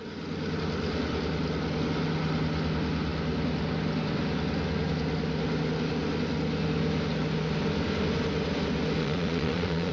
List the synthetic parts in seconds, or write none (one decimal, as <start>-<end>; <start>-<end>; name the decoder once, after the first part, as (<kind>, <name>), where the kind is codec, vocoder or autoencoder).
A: 9.0-9.9 (vocoder, Vocos)